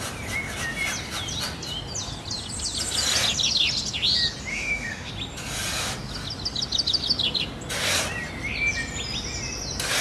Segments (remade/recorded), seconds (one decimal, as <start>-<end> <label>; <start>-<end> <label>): 0.0-4.5 recorded; 4.5-5.1 remade; 5.1-10.0 recorded